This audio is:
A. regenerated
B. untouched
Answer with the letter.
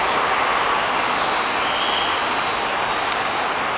B